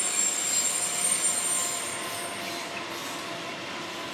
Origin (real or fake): real